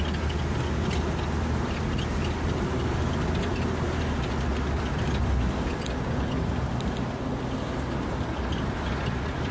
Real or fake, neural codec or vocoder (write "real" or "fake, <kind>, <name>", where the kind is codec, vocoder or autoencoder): real